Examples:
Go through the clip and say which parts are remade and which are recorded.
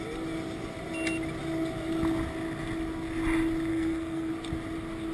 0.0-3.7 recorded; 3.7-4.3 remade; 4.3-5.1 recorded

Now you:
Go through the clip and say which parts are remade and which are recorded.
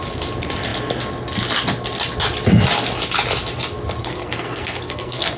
0.0-4.0 recorded; 4.0-5.4 remade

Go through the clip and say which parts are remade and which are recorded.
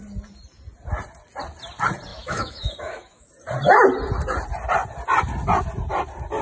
0.0-2.1 recorded; 2.1-3.3 remade; 3.3-6.4 recorded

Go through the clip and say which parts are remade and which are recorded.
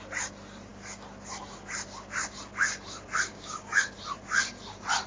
0.0-3.3 recorded; 3.3-3.9 remade; 3.9-5.1 recorded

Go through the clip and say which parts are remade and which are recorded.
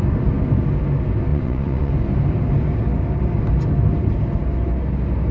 0.0-1.3 recorded; 1.3-1.9 remade; 1.9-5.3 recorded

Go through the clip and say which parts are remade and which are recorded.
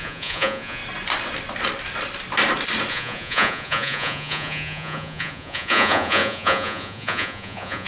0.0-0.8 remade; 0.8-2.9 recorded; 2.9-7.9 remade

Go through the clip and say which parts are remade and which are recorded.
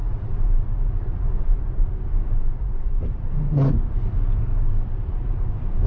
0.0-2.2 recorded; 2.2-5.9 remade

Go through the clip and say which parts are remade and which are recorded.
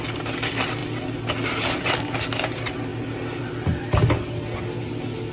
0.0-5.3 recorded